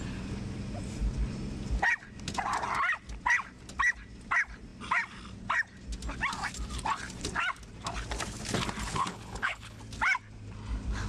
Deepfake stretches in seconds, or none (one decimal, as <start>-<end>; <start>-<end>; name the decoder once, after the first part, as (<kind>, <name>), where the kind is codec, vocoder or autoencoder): 8.9-9.8 (codec, HILCodec)